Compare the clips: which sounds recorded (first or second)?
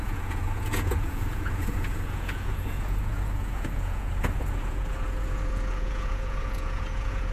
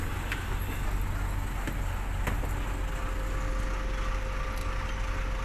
second